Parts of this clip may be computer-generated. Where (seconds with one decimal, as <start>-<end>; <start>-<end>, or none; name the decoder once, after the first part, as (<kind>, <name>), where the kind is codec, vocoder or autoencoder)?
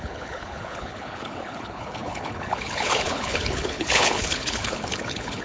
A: 0.0-5.4 (codec, HILCodec)